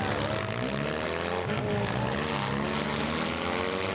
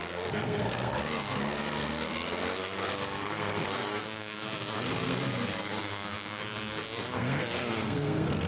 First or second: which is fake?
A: second